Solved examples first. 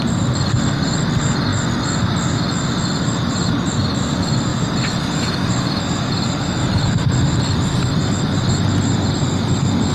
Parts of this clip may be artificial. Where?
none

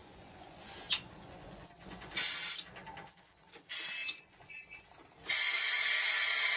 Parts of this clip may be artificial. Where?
0.0-2.1 (vocoder, Vocos); 4.0-4.9

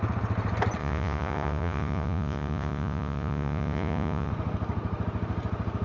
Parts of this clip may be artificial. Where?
0.8-4.3 (vocoder, Vocos)

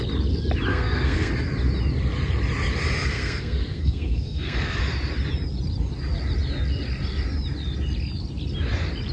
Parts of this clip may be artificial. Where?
0.7-1.3 (codec, SNAC); 3.1-4.8

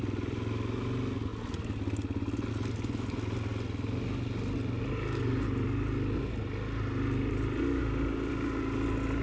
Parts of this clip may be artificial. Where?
none

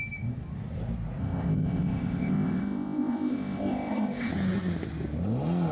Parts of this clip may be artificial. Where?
1.2-4.3 (codec, ZipCodec)

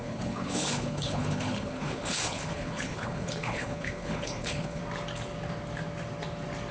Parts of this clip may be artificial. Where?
0.0-4.8 (codec, HILCodec)

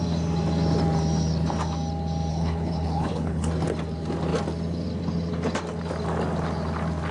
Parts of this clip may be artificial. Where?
2.3-3.5 (codec, HILCodec)